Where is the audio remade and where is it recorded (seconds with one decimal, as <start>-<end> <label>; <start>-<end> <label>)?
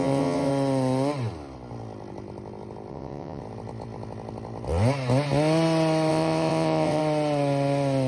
0.0-0.5 remade; 0.5-2.9 recorded; 2.9-3.4 remade; 3.4-6.1 recorded; 6.1-7.0 remade; 7.0-8.1 recorded